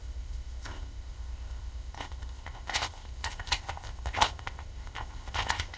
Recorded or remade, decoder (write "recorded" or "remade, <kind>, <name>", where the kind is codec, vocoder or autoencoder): remade, codec, ZipCodec